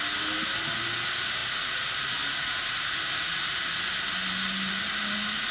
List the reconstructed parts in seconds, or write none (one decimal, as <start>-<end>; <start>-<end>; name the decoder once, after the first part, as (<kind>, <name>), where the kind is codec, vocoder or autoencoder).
none